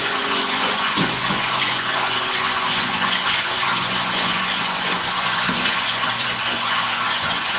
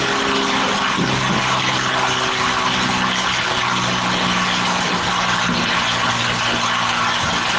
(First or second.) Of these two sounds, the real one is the second